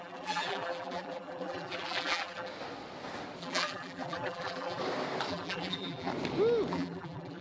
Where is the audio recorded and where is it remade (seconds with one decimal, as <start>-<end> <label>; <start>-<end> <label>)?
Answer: 0.0-2.5 remade; 2.5-3.4 recorded; 3.4-4.8 remade; 4.8-5.3 recorded; 5.3-6.1 remade; 6.1-6.7 recorded; 6.7-7.4 remade